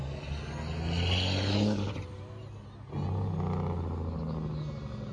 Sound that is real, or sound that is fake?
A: real